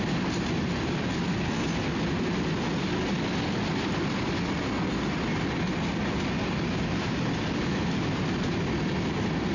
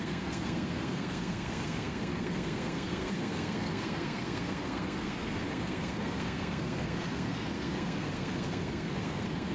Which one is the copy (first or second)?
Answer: second